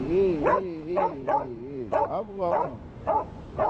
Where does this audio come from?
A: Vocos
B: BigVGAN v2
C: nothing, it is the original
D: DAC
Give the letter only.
A